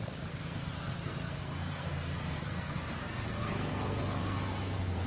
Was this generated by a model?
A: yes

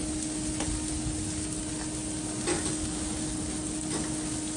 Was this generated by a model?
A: no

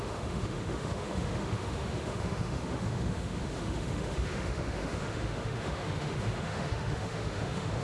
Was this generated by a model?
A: yes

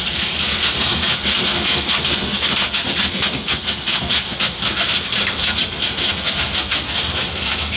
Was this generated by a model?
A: yes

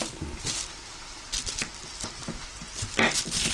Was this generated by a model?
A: no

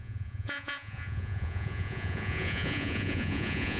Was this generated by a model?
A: yes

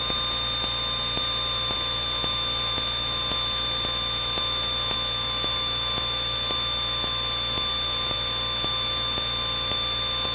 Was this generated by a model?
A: no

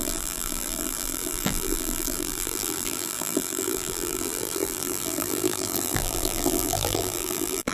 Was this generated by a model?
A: yes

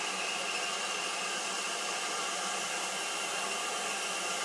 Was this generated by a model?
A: no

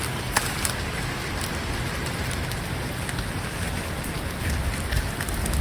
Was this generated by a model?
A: no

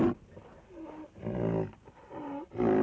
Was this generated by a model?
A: no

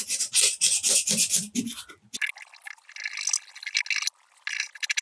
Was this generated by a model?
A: no